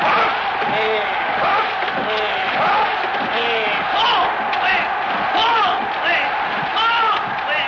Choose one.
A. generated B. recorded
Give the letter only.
B